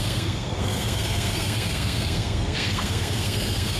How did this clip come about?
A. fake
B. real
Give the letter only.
A